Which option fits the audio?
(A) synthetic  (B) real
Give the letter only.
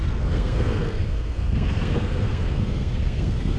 A